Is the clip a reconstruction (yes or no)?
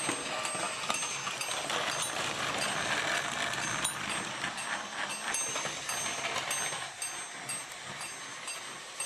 no